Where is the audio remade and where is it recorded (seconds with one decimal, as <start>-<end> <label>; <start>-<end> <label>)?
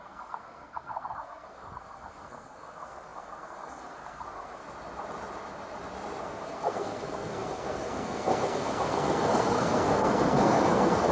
0.0-4.6 remade; 4.6-6.2 recorded; 6.2-11.1 remade